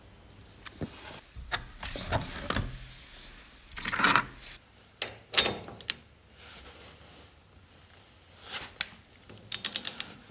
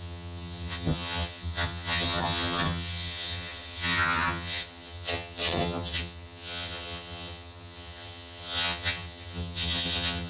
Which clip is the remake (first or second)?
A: second